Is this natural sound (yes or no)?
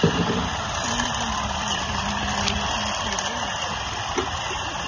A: no